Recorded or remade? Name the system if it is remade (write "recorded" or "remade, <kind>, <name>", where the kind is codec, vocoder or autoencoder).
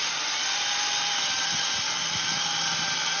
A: remade, vocoder, BigVGAN v2